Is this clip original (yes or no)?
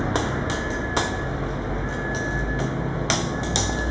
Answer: yes